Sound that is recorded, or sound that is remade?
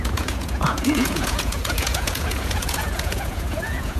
remade